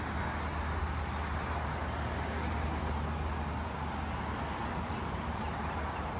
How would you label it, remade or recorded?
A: recorded